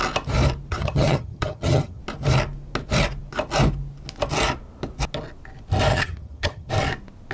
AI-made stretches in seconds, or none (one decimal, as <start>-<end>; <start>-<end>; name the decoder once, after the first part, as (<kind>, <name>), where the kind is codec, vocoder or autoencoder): 0.7-2.0 (vocoder, HiFi-GAN); 5.9-6.7